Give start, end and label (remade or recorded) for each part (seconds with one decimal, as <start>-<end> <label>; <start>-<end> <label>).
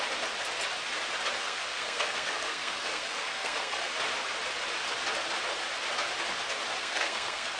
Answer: 0.0-1.4 recorded; 1.4-3.9 remade; 3.9-6.8 recorded; 6.8-7.6 remade